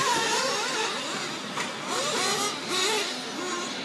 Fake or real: real